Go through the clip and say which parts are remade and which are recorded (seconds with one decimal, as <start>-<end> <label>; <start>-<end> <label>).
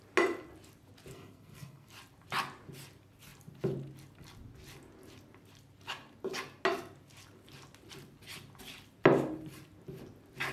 0.0-1.1 recorded; 1.1-1.9 remade; 1.9-10.5 recorded